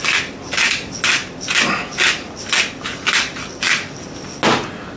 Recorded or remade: recorded